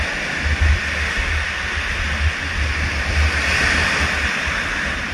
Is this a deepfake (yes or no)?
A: no